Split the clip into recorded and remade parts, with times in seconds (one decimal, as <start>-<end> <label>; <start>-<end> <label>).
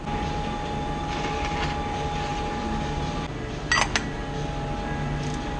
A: 0.0-5.6 recorded